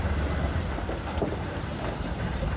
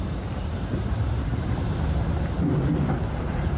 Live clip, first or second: first